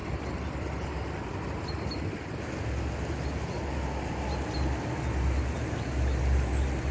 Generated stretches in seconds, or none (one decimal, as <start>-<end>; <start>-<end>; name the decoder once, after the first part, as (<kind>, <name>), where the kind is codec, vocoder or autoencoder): none